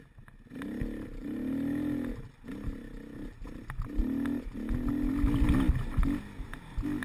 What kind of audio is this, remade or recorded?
recorded